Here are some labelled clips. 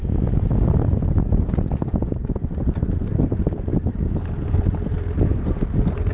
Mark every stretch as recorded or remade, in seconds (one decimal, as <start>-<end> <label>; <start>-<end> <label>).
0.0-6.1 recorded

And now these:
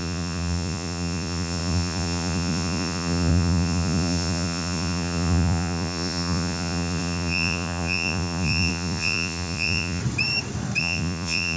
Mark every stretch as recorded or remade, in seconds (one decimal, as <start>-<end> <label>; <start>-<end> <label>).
0.0-10.0 remade; 10.0-10.8 recorded; 10.8-11.6 remade

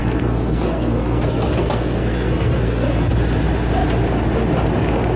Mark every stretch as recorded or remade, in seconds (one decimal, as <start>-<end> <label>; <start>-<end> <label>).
0.0-3.1 remade; 3.1-5.2 recorded

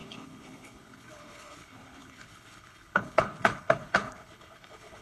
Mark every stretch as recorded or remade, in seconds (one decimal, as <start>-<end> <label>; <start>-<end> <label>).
0.0-5.0 remade

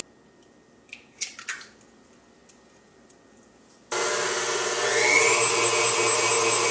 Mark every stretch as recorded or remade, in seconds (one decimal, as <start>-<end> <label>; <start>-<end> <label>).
0.0-6.7 recorded

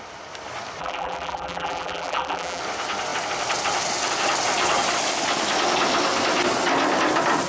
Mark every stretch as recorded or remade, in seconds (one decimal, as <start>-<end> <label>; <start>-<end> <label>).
0.0-0.8 recorded; 0.8-2.6 remade; 2.6-7.5 recorded